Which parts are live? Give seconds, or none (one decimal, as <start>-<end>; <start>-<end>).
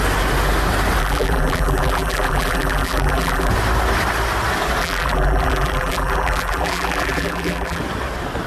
0.0-1.0; 3.5-4.8; 7.8-8.5